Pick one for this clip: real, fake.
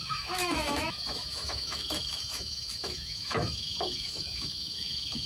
fake